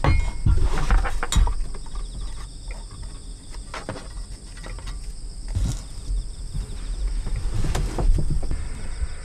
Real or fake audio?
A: real